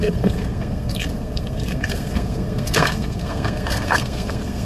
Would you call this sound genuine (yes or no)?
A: no